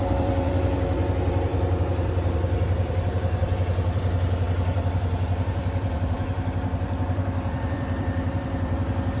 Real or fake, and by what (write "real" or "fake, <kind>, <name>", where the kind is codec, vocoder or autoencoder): fake, vocoder, BigVGAN v2